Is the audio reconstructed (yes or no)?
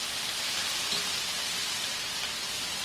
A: no